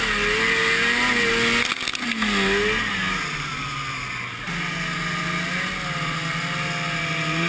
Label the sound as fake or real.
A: real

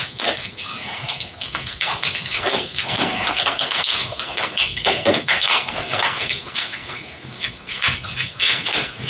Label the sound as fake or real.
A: fake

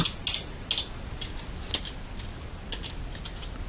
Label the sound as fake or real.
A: real